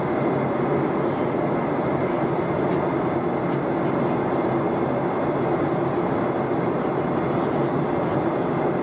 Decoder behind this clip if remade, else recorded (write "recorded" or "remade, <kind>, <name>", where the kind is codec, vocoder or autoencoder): recorded